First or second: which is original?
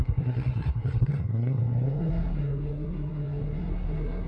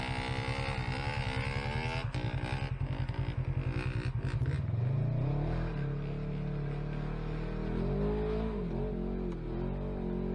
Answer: second